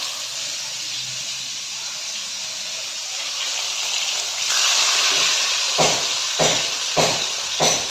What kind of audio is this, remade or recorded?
recorded